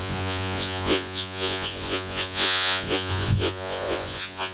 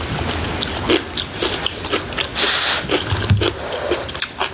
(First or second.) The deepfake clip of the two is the first